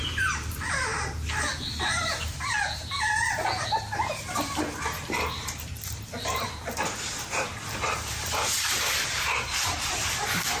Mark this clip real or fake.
fake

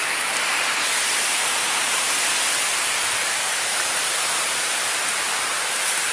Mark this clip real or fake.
fake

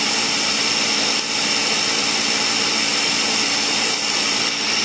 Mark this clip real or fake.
real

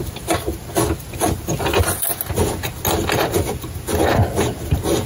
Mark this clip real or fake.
real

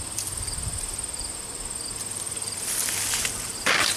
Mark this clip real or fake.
fake